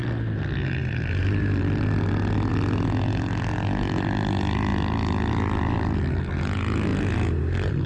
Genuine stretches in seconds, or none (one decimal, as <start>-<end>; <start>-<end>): 0.0-7.9